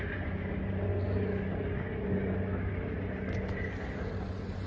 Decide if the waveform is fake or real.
real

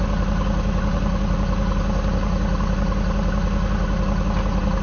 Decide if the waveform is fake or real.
real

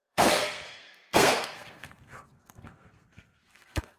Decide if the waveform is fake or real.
fake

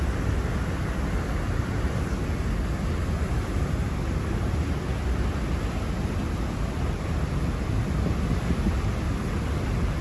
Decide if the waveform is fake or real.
real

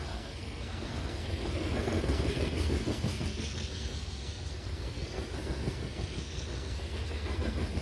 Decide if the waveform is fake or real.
fake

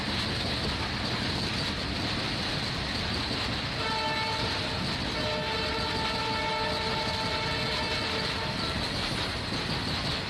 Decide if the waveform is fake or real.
real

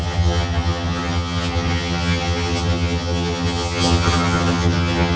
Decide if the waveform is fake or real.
fake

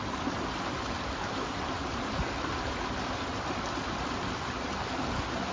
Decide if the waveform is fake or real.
real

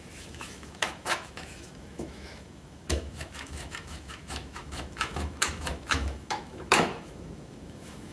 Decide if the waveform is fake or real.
fake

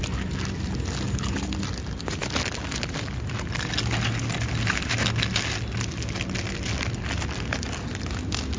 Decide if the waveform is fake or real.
real